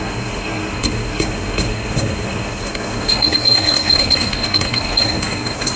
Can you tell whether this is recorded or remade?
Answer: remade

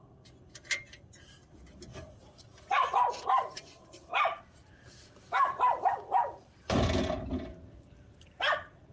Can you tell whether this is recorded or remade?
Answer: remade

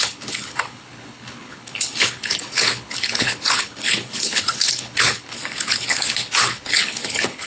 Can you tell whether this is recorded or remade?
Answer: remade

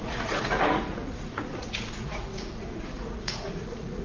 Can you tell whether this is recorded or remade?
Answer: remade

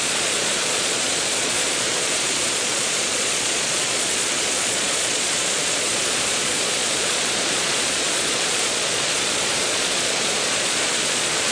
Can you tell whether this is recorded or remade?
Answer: remade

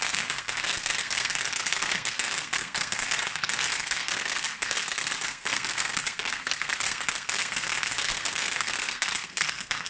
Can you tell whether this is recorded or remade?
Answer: remade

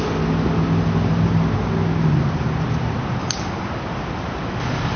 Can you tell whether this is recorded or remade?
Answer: recorded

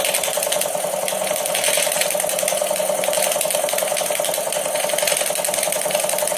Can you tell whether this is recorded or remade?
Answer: recorded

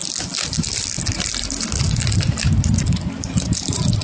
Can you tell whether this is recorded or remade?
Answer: recorded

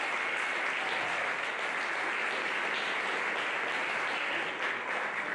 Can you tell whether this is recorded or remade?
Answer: recorded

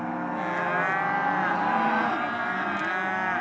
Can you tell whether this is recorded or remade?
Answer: recorded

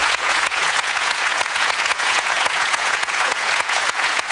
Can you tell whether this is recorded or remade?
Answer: remade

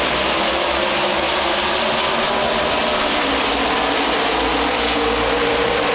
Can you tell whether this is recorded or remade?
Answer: recorded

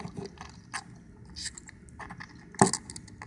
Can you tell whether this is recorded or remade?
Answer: recorded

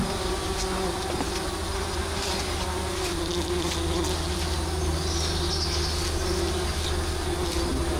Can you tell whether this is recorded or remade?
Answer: recorded